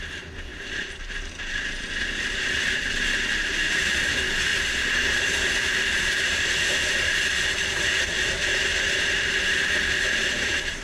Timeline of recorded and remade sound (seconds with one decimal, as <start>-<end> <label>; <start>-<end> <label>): 0.0-10.8 remade